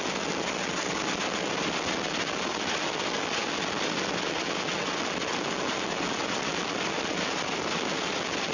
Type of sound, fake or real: real